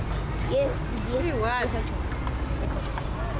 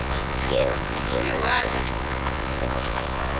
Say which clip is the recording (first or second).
first